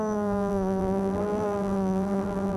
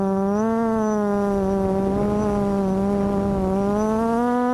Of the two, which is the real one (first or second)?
second